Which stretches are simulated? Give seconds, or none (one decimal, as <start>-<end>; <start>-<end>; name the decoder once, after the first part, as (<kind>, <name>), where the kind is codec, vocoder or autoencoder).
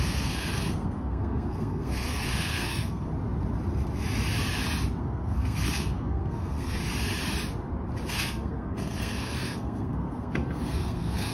0.0-3.1 (codec, SNAC); 5.0-6.8; 8.1-11.3